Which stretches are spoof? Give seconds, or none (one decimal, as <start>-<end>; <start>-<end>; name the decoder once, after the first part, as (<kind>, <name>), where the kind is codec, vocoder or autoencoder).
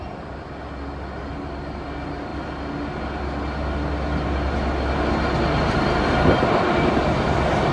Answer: none